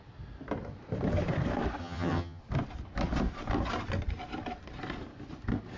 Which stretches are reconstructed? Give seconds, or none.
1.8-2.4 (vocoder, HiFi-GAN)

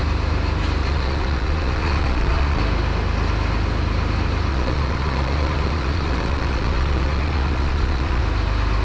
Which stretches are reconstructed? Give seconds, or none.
0.8-2.6 (vocoder, Vocos); 4.5-8.2